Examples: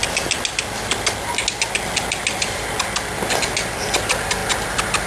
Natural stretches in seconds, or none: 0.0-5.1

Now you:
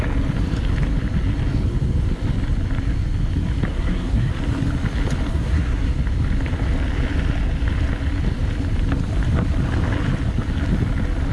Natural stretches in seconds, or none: 0.0-3.7; 4.3-5.3; 5.9-11.3